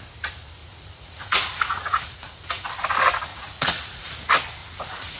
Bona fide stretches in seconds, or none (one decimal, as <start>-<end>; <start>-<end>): 0.0-0.6; 2.7-3.3; 4.1-4.6